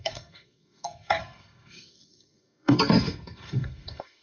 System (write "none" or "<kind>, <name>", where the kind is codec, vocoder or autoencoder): codec, SNAC